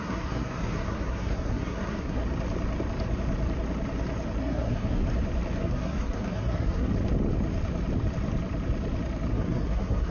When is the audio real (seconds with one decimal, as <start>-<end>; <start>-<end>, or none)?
2.2-4.4; 5.0-5.6; 6.9-9.3